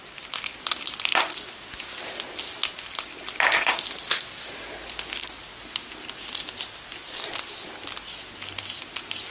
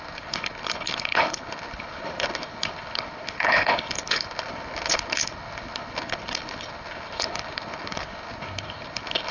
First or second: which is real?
first